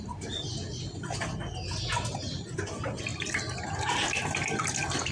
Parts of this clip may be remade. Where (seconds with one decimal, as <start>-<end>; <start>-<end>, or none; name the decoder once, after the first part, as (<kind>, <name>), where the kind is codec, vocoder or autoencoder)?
none

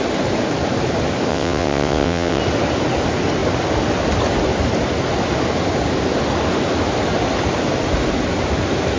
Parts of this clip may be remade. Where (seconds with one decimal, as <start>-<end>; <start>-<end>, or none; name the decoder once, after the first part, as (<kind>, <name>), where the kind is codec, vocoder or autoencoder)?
1.3-2.4 (vocoder, WaveNeXt)

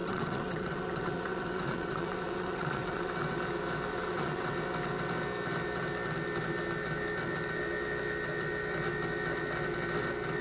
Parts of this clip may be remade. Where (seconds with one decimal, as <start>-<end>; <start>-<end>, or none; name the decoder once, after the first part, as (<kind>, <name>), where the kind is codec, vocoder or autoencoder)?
0.0-3.1 (vocoder, WaveNeXt); 3.9-4.5

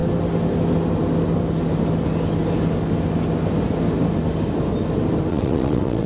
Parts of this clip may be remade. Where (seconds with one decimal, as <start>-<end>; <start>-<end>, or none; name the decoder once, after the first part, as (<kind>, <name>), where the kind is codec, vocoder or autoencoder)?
5.3-6.1 (vocoder, WaveNeXt)

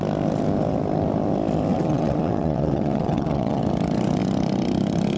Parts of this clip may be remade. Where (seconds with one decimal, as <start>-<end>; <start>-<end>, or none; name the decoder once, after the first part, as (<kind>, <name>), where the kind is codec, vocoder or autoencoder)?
1.7-3.6 (vocoder, WaveNeXt)